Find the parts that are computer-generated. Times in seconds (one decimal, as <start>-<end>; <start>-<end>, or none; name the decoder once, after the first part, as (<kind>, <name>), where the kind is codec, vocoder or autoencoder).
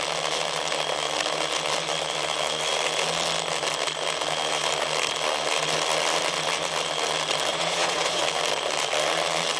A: 7.5-8.2 (vocoder, Vocos)